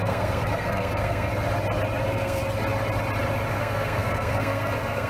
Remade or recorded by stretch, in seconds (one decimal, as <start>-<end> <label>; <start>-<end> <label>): 0.0-1.3 remade; 1.3-2.0 recorded; 2.0-2.4 remade; 2.4-3.5 recorded; 3.5-5.1 remade